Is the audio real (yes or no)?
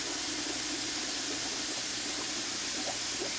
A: yes